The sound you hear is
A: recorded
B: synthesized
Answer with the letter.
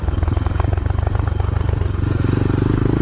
A